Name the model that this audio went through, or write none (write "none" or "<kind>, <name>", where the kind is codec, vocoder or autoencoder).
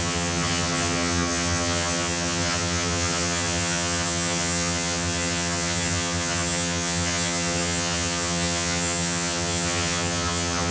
vocoder, HiFi-GAN